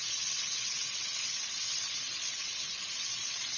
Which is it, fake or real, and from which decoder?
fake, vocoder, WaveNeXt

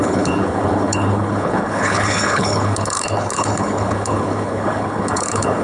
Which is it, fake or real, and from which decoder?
fake, codec, HILCodec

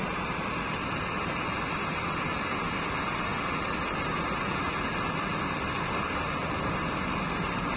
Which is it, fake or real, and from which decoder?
real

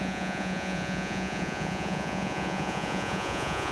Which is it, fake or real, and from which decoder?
fake, vocoder, Vocos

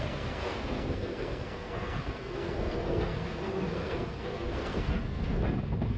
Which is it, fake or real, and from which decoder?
fake, codec, SNAC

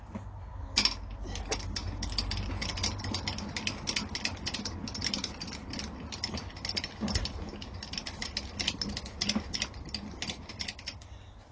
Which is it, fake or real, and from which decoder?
real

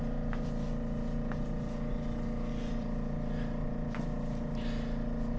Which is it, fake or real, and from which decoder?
real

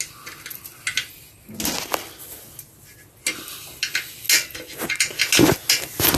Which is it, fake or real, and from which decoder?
real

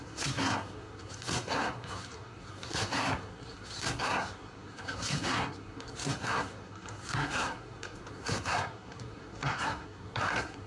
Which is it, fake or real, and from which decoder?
fake, codec, SNAC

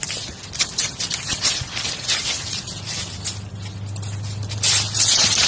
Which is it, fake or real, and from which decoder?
real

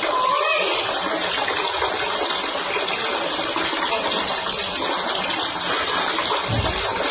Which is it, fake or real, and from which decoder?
real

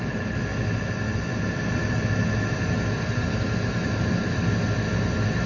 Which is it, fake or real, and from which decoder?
real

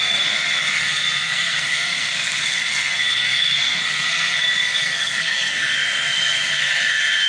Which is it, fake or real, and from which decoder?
fake, codec, SNAC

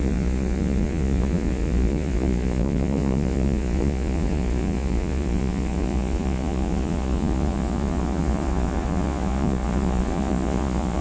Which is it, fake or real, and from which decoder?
fake, vocoder, Vocos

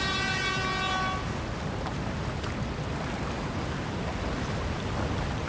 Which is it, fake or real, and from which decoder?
real